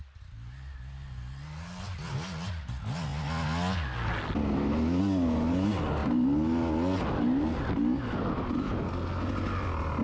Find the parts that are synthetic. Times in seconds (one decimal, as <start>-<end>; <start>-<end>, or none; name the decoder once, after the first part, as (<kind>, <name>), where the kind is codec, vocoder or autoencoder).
none